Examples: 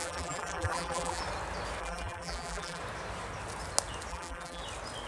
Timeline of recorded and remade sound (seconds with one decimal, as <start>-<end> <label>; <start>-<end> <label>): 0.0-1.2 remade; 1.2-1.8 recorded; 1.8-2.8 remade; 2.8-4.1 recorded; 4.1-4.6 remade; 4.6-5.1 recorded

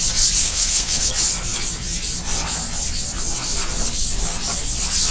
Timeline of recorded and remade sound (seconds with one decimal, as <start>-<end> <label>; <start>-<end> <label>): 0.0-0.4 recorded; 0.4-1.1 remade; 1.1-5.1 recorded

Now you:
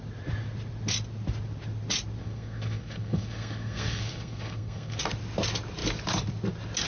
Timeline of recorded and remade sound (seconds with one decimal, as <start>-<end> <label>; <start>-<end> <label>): 0.0-2.2 recorded; 2.2-5.0 remade; 5.0-6.9 recorded

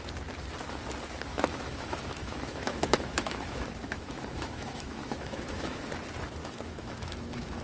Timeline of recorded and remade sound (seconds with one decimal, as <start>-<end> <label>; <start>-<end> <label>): 0.0-1.3 recorded; 1.3-5.9 remade; 5.9-6.4 recorded; 6.4-7.6 remade

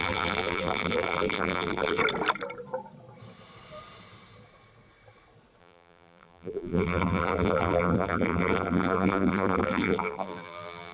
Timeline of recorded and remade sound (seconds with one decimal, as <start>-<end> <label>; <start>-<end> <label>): 0.0-2.0 remade; 2.0-5.6 recorded; 5.6-10.9 remade

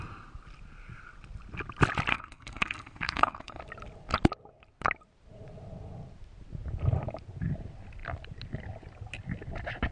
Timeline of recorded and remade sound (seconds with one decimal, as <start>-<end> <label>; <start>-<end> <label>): 0.0-2.1 recorded; 2.1-3.6 remade; 3.6-9.9 recorded

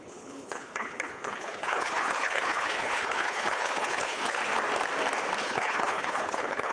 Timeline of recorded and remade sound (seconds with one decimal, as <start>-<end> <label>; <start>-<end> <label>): 0.0-4.4 remade; 4.4-5.4 recorded; 5.4-6.7 remade